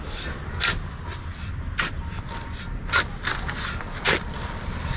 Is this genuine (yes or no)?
yes